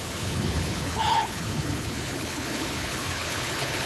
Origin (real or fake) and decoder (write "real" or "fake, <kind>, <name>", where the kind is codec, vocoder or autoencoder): fake, codec, HILCodec